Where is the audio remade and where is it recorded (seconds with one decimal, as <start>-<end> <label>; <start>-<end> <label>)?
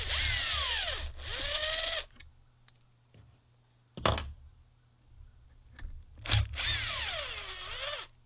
0.0-8.3 recorded